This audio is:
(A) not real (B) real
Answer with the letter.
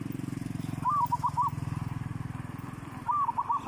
B